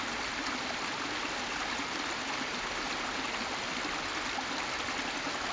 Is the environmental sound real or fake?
real